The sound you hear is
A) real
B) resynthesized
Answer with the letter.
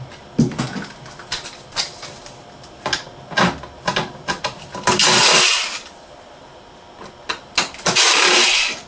A